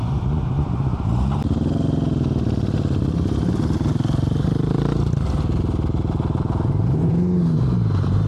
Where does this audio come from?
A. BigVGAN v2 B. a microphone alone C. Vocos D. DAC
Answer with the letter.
B